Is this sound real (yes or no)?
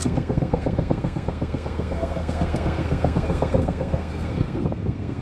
no